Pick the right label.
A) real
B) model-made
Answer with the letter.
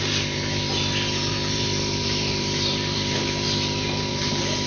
B